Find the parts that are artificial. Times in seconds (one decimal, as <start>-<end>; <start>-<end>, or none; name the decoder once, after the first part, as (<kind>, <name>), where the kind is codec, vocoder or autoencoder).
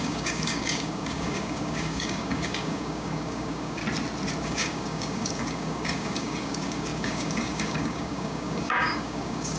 0.0-3.8 (codec, DAC); 4.4-9.6